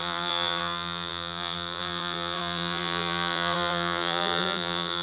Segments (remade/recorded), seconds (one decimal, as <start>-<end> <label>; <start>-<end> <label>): 0.0-5.0 remade